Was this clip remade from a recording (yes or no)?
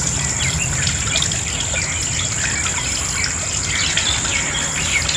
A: no